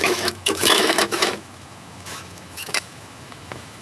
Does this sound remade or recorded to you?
remade